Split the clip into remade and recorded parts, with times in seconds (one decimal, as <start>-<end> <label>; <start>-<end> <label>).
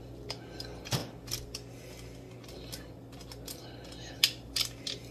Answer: 0.0-5.1 recorded